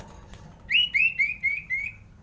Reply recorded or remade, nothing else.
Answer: recorded